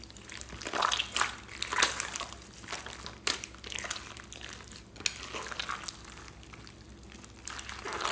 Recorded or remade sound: recorded